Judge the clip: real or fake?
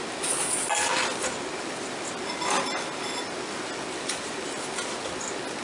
real